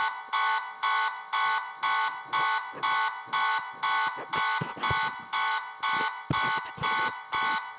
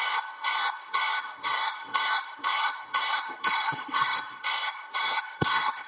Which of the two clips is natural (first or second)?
first